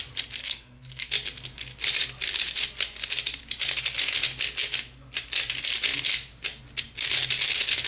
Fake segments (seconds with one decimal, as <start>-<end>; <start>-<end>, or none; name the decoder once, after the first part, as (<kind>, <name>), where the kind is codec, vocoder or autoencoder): 0.4-1.1 (codec, SNAC)